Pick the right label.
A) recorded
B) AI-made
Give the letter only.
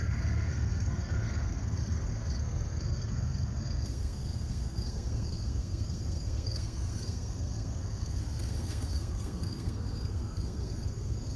B